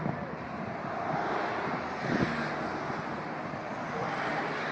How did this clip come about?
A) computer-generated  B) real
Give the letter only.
B